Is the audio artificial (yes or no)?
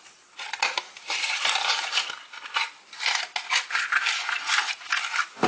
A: no